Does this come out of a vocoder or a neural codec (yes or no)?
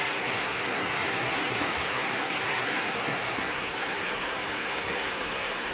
yes